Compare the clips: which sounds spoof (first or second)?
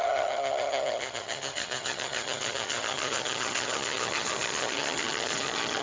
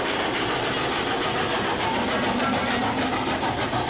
first